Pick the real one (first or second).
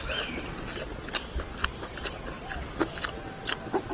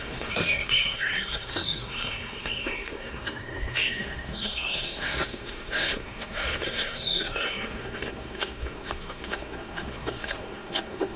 first